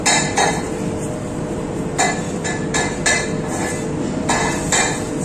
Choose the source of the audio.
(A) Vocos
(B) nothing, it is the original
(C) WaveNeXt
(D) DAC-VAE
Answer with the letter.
B